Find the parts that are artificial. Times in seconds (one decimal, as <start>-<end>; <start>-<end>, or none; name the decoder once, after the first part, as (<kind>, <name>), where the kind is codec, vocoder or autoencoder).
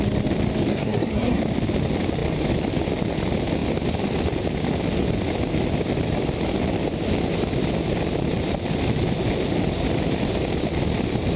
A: 0.7-1.4 (codec, SNAC)